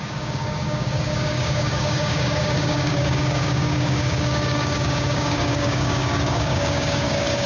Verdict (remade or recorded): remade